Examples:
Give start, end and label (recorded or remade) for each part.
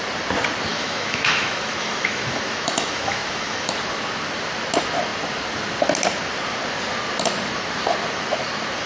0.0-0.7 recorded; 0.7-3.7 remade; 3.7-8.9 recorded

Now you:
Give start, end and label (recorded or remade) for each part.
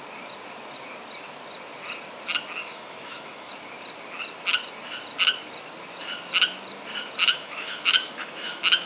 0.0-2.6 recorded; 2.6-3.5 remade; 3.5-7.2 recorded; 7.2-8.9 remade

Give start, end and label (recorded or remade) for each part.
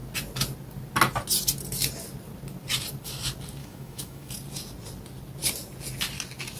0.0-3.6 recorded; 3.6-4.3 remade; 4.3-6.6 recorded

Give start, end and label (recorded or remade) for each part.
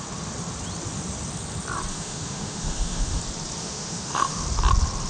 0.0-1.9 recorded; 1.9-3.2 remade; 3.2-3.6 recorded; 3.6-4.4 remade; 4.4-5.1 recorded